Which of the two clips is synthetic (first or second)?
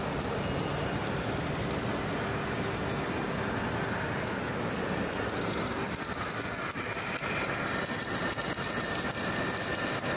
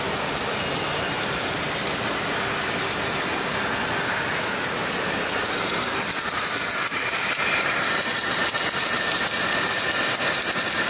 second